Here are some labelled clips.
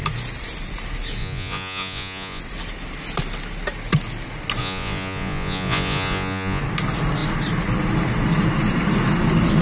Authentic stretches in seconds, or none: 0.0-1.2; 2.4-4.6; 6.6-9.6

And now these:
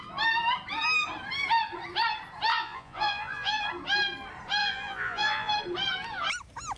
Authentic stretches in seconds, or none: 0.0-2.5; 3.6-4.6; 5.5-6.8

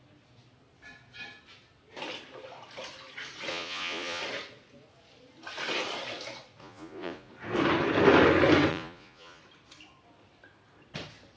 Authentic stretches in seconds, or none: 0.0-3.5; 4.2-6.6; 7.3-8.7; 9.4-11.4